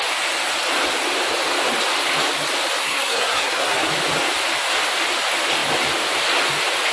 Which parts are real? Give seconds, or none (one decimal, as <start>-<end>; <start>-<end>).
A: 0.0-2.8; 3.9-6.9